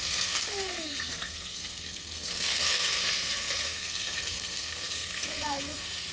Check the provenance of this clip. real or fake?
fake